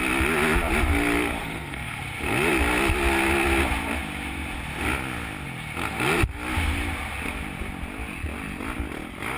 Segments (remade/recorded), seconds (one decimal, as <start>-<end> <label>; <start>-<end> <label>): 0.0-1.4 recorded; 1.4-2.0 remade; 2.0-9.4 recorded